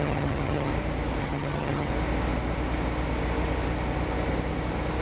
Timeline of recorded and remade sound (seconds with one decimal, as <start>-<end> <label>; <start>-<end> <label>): 0.0-0.7 remade; 0.7-1.2 recorded; 1.2-1.9 remade; 1.9-5.0 recorded